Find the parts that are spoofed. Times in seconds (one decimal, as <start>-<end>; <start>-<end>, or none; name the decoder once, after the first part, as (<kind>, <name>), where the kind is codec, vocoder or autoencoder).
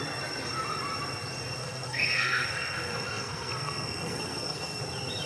1.6-4.8 (codec, SNAC)